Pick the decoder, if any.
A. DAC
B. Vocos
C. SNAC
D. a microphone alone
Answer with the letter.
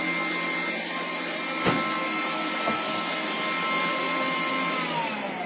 D